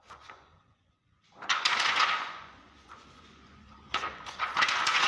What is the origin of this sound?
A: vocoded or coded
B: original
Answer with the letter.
A